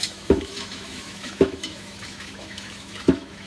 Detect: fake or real fake